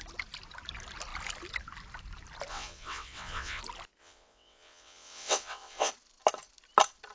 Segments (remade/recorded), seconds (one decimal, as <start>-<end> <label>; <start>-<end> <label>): 0.0-2.5 recorded; 2.5-3.6 remade; 3.6-4.0 recorded; 4.0-5.9 remade; 5.9-7.1 recorded